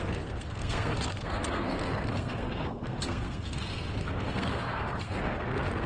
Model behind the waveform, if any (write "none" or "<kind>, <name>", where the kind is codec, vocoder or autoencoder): codec, SNAC